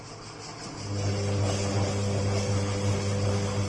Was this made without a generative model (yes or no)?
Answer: yes